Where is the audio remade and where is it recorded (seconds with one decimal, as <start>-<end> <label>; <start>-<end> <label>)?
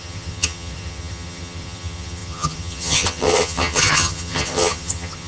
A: 0.0-5.3 remade